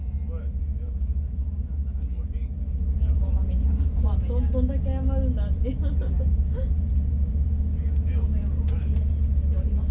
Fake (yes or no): no